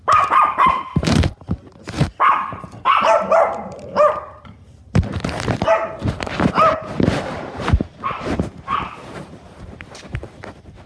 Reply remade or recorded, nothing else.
remade